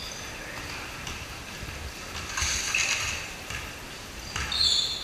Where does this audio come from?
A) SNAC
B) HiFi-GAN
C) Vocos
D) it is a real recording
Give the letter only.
D